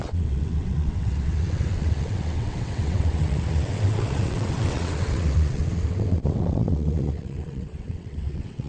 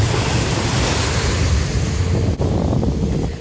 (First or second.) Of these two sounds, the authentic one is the second